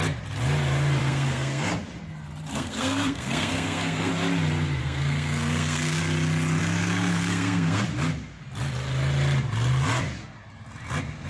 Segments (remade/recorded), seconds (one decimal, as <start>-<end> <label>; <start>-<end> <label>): 0.0-1.0 recorded; 1.0-1.7 remade; 1.7-2.5 recorded; 2.5-4.1 remade; 4.1-4.8 recorded; 4.8-6.0 remade; 6.0-6.6 recorded; 6.6-7.8 remade; 7.8-11.3 recorded